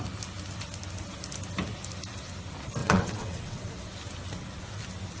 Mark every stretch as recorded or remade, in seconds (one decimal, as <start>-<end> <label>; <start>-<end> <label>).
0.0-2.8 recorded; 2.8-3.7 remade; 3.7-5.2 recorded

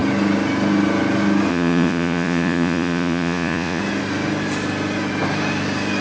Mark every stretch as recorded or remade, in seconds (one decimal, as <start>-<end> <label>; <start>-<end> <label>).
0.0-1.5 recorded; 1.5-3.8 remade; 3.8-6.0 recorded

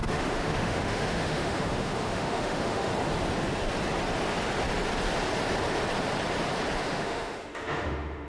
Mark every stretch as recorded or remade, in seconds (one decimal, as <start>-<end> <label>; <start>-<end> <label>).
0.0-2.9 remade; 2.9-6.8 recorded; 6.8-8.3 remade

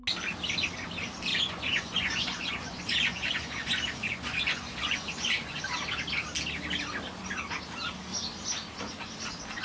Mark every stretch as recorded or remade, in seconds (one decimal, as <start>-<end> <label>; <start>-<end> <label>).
0.0-1.3 recorded; 1.3-5.6 remade; 5.6-9.6 recorded

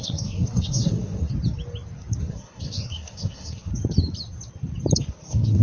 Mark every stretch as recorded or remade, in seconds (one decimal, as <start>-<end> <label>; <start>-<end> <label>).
0.0-1.3 remade; 1.3-2.2 recorded; 2.2-3.7 remade; 3.7-5.0 recorded; 5.0-5.6 remade

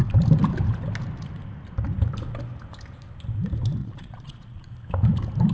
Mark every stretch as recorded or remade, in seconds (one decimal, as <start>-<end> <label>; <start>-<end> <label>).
0.0-3.8 recorded; 3.8-4.7 remade; 4.7-5.5 recorded

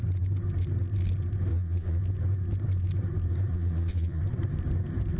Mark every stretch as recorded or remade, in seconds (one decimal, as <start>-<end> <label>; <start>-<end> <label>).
0.0-1.5 recorded; 1.5-2.0 remade; 2.0-3.5 recorded; 3.5-4.2 remade; 4.2-5.2 recorded

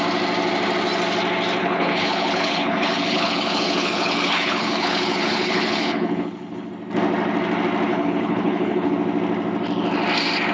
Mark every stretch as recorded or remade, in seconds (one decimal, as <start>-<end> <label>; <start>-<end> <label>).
0.0-1.6 recorded; 1.6-6.7 remade; 6.7-7.9 recorded; 7.9-8.9 remade; 8.9-10.5 recorded